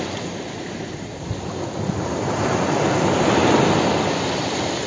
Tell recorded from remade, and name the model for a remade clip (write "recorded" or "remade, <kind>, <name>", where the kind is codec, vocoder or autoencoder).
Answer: recorded